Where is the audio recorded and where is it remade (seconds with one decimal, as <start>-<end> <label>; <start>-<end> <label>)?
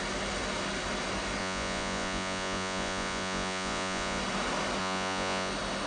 0.0-1.4 recorded; 1.4-4.2 remade; 4.2-4.8 recorded; 4.8-5.5 remade; 5.5-5.9 recorded